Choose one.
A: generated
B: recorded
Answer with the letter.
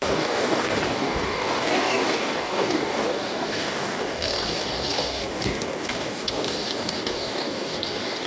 A